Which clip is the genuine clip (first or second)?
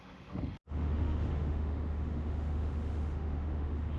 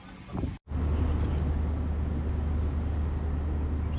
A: second